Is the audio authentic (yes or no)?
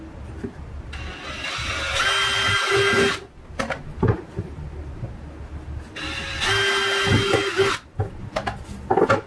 yes